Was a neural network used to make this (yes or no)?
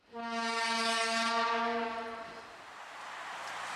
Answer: no